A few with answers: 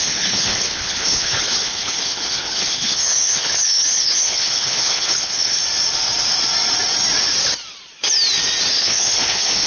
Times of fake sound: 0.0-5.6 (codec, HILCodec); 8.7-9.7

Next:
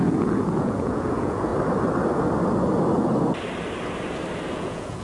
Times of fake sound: 0.0-1.5 (vocoder, Vocos); 4.5-5.0

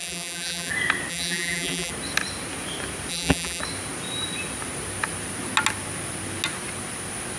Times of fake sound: 0.0-0.7 (vocoder, BigVGAN v2); 1.1-1.9; 3.1-3.6

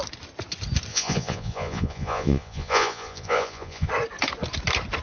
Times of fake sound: 0.9-3.9 (vocoder, Vocos)

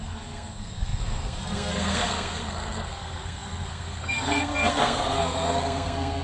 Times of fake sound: 0.0-6.2 (codec, SNAC)

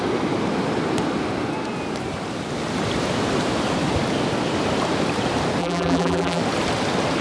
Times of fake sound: 5.6-6.4 (vocoder, BigVGAN v2)

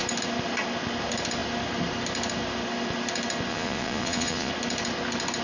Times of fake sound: 3.5-4.5 (vocoder, Vocos)